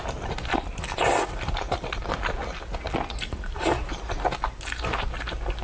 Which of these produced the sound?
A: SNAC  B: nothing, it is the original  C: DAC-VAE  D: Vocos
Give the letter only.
B